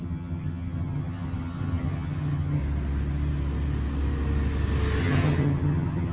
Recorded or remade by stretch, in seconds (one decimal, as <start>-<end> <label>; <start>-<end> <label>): 0.0-2.6 remade; 2.6-5.0 recorded; 5.0-6.1 remade